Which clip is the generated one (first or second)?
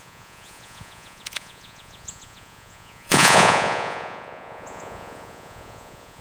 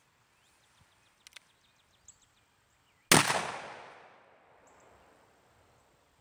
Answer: first